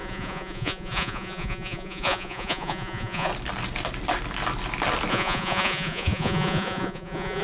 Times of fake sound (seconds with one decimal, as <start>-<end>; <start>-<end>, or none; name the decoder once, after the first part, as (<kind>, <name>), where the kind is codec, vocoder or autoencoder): 0.0-3.3 (vocoder, Vocos); 5.1-7.4